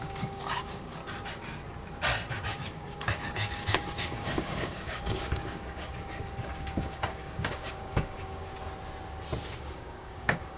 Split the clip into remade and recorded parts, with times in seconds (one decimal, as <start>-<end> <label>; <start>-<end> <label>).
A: 0.0-1.0 remade; 1.0-2.3 recorded; 2.3-8.5 remade; 8.5-9.5 recorded; 9.5-10.6 remade